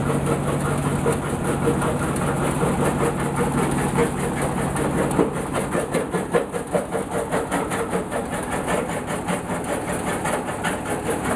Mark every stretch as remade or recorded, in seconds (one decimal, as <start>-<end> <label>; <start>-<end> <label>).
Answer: 0.0-11.4 recorded